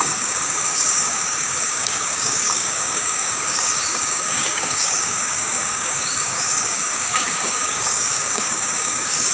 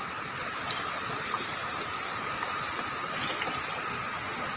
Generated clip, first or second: first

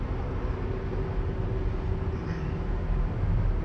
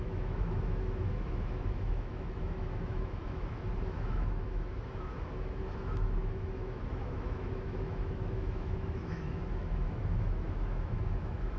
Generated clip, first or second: second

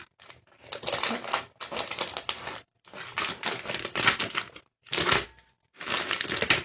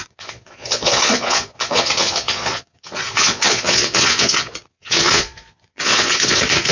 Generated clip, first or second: second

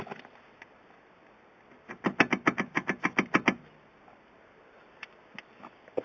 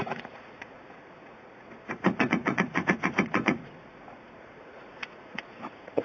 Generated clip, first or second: second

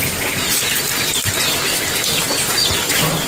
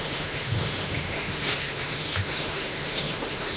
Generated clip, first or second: second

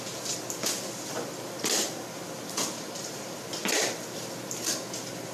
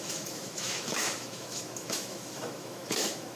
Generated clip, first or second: second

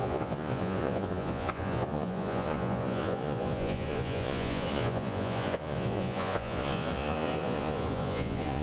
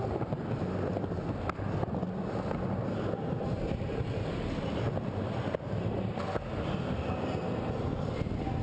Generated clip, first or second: first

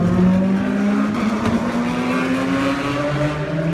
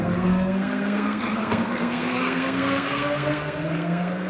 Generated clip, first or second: second